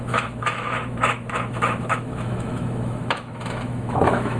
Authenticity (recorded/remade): remade